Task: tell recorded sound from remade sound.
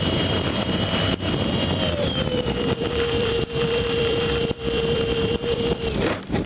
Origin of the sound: remade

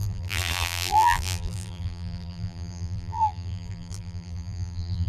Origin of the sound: remade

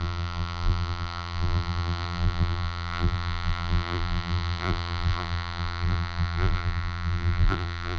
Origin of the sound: remade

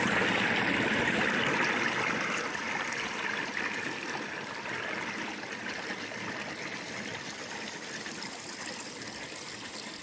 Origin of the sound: recorded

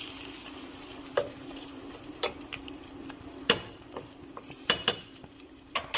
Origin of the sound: remade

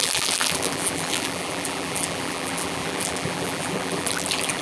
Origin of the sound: remade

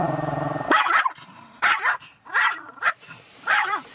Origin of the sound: remade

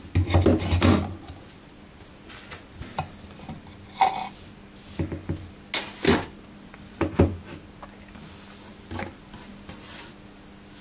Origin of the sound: recorded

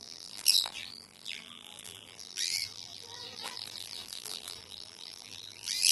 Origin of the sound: remade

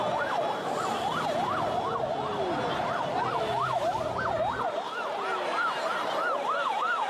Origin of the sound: recorded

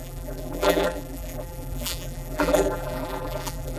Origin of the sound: remade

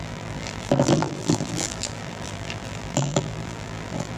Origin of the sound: remade